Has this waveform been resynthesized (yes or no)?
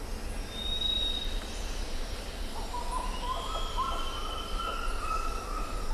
no